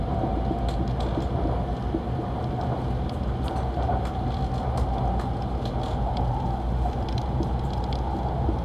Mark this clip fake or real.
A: real